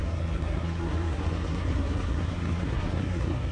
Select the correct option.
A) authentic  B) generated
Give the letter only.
B